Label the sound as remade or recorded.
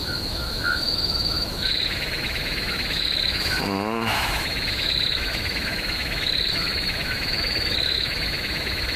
remade